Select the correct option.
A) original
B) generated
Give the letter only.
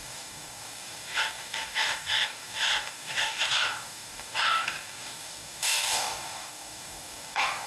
B